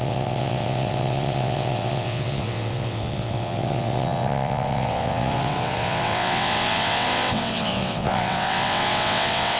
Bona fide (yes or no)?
no